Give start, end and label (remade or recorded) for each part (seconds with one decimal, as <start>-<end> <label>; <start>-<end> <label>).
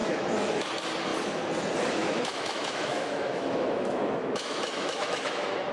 0.0-0.7 remade; 0.7-2.0 recorded; 2.0-5.7 remade